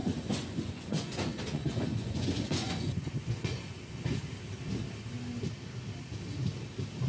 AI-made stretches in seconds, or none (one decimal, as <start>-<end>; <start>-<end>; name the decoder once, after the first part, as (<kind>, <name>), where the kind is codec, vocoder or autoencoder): 0.0-4.3 (vocoder, Vocos)